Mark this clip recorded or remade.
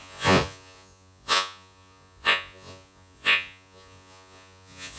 remade